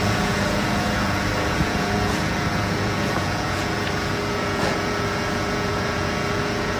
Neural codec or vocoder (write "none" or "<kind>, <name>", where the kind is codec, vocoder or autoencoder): vocoder, Vocos